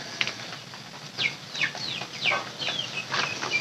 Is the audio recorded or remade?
recorded